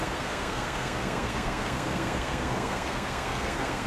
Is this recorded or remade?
remade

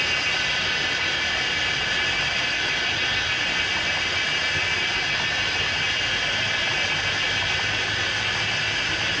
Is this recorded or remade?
recorded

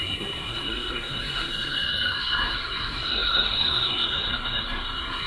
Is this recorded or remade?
remade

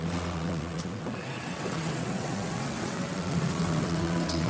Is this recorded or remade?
remade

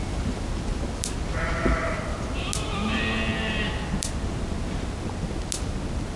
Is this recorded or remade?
recorded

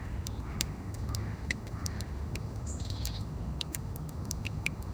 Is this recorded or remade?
remade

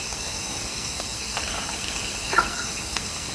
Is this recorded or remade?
remade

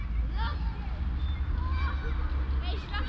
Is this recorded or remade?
recorded